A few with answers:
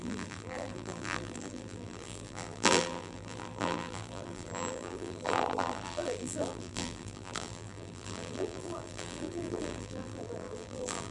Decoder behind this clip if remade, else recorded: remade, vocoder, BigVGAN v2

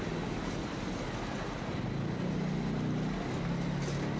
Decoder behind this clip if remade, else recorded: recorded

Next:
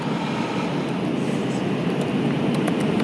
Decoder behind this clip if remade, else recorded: recorded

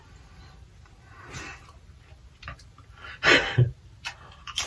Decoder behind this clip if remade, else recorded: recorded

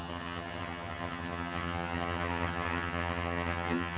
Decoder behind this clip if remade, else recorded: remade, vocoder, HiFi-GAN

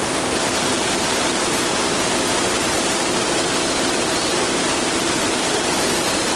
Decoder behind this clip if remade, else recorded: remade, vocoder, BigVGAN v2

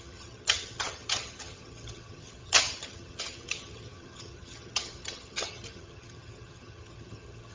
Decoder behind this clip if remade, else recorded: remade, vocoder, HiFi-GAN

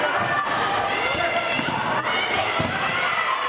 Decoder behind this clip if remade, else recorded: recorded